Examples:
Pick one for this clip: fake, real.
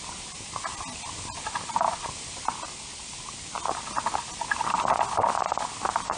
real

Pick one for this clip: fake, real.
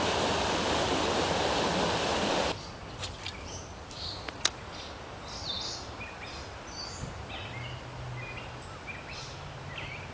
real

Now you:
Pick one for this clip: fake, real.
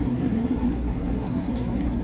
fake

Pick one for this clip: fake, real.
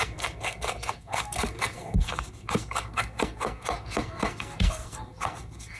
fake